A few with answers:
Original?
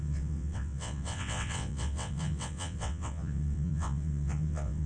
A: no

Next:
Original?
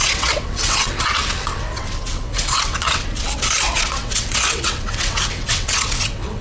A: no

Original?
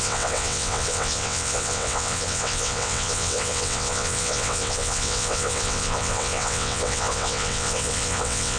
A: no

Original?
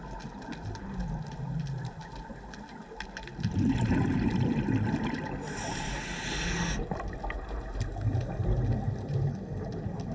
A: yes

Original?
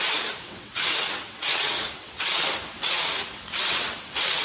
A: no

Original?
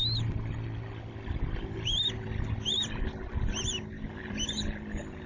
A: yes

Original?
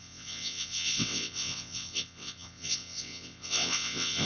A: no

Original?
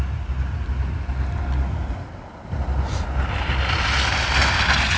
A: yes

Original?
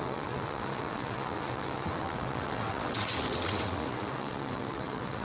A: no